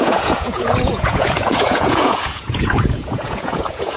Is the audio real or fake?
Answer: fake